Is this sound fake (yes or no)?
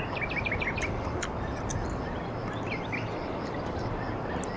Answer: no